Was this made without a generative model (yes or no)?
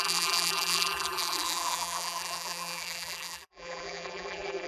no